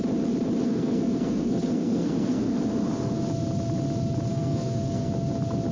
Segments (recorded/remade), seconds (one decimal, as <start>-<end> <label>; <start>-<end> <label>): 0.0-0.6 recorded; 0.6-2.5 remade; 2.5-4.3 recorded; 4.3-5.1 remade; 5.1-5.7 recorded